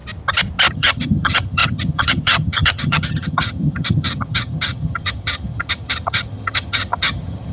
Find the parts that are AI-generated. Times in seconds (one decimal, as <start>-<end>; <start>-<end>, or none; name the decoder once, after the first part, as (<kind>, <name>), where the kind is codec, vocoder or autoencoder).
0.7-7.5 (vocoder, HiFi-GAN)